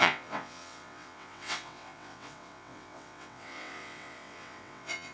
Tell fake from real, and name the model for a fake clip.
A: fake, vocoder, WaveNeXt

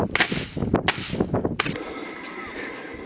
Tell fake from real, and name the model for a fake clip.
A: real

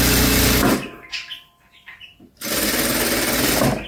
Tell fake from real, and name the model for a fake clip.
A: fake, vocoder, BigVGAN v2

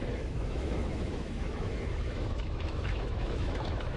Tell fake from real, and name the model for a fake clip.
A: fake, autoencoder, DAC-VAE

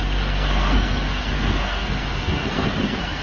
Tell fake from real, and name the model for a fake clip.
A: fake, codec, SNAC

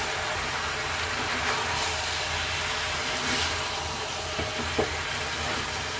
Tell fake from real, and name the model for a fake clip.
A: real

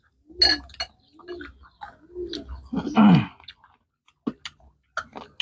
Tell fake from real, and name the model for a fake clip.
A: real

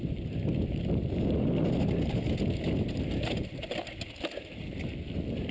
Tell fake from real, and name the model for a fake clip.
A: real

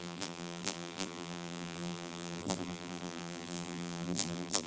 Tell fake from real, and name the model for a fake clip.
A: fake, vocoder, BigVGAN v2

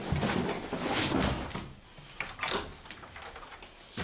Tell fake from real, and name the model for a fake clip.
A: real